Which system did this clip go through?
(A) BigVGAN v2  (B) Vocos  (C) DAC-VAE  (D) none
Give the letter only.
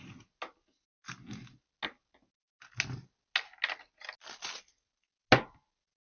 D